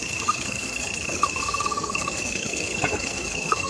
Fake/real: fake